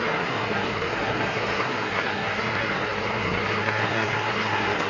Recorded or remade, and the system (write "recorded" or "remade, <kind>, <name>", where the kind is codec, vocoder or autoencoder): remade, codec, SNAC